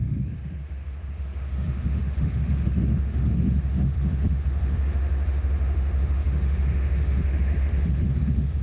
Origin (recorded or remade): remade